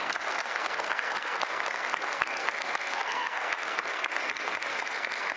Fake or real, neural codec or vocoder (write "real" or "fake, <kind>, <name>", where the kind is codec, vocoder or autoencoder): fake, codec, SNAC